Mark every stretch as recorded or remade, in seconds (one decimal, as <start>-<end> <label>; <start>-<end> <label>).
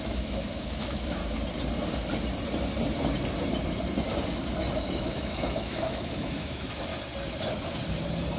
0.0-1.2 remade; 1.2-4.8 recorded; 4.8-6.9 remade; 6.9-8.4 recorded